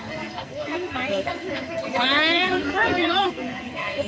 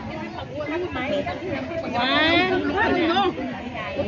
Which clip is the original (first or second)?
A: second